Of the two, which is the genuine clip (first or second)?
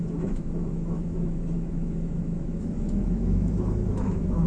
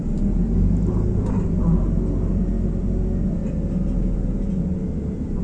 second